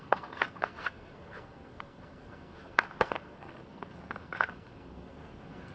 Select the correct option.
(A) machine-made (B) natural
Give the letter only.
A